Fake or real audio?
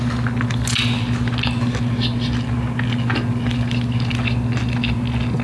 real